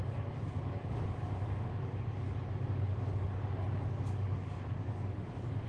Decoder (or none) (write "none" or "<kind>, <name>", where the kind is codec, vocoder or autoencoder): codec, DAC